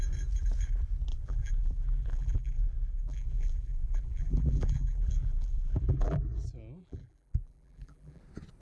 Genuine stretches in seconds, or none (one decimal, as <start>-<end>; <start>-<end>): 0.0-1.1; 6.2-6.8; 8.2-8.6